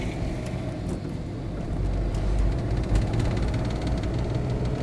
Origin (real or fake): real